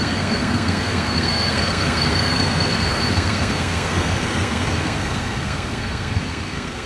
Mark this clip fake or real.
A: fake